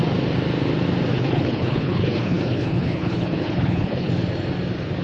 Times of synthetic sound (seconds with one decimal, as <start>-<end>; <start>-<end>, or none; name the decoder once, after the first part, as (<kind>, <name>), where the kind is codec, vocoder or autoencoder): 1.1-4.1 (codec, HILCodec)